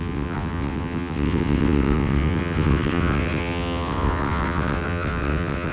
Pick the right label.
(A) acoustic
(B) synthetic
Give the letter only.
B